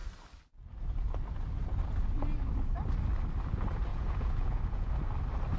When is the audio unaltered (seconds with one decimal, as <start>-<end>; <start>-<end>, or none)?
0.0-3.9; 4.9-5.6